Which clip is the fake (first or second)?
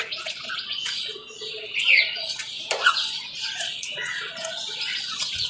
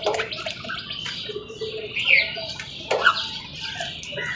first